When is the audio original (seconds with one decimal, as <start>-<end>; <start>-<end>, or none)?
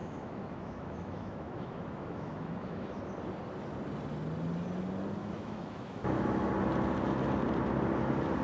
3.0-5.2; 6.5-8.4